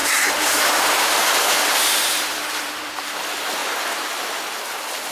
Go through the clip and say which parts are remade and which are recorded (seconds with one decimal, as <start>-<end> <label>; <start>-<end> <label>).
0.0-3.1 remade; 3.1-3.6 recorded; 3.6-4.2 remade; 4.2-5.1 recorded